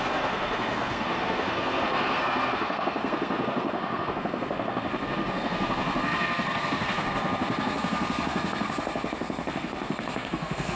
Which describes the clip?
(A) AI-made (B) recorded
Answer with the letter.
A